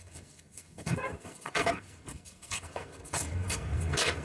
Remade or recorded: remade